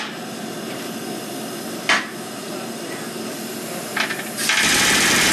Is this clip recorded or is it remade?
recorded